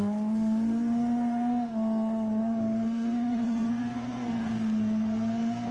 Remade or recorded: remade